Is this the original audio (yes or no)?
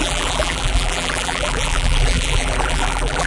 no